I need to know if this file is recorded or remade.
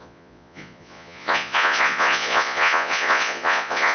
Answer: remade